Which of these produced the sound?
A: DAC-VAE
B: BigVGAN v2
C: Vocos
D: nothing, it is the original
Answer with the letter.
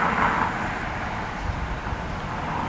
D